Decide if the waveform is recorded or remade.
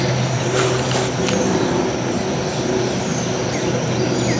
recorded